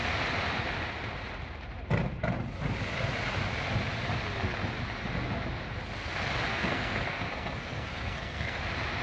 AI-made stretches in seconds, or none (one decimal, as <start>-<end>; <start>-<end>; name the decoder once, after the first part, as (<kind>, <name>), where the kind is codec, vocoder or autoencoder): 6.5-8.6 (codec, SNAC)